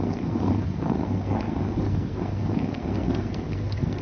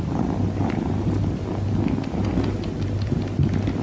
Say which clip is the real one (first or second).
second